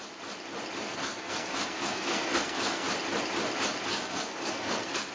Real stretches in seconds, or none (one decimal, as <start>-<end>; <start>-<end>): 0.0-0.8; 2.9-3.9